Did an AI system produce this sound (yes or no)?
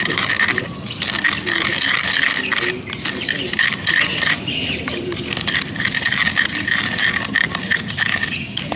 no